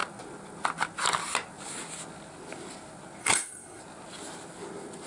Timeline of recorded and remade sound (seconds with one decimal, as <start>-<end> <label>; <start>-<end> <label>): 0.0-3.2 recorded; 3.2-3.8 remade; 3.8-5.1 recorded